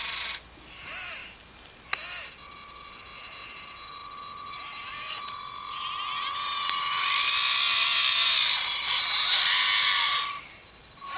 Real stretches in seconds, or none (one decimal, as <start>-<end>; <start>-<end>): 0.0-11.2